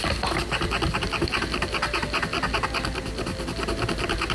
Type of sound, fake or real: real